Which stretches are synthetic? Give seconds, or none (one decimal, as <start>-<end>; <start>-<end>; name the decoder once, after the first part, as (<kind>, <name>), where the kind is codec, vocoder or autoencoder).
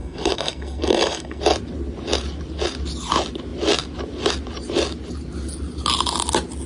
0.0-1.4 (codec, SNAC)